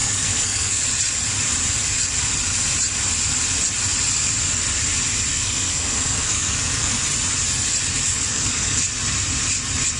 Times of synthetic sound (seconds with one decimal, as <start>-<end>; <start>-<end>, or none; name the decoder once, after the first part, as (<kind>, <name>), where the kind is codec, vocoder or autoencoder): 0.0-0.8 (codec, SNAC); 5.3-7.0; 8.3-8.8